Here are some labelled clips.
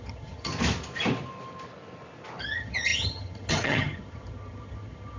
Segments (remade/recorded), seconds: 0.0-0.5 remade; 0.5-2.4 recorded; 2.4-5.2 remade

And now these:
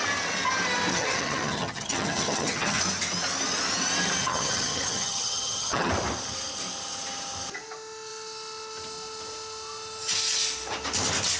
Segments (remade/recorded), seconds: 0.0-0.9 recorded; 0.9-2.8 remade; 2.8-4.2 recorded; 4.2-5.9 remade; 5.9-11.4 recorded

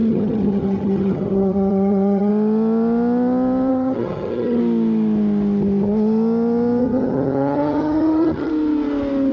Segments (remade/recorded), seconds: 0.0-2.3 remade; 2.3-3.7 recorded; 3.7-4.6 remade; 4.6-6.8 recorded; 6.8-8.5 remade; 8.5-9.3 recorded

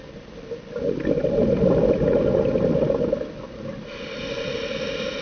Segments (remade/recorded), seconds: 0.0-5.2 recorded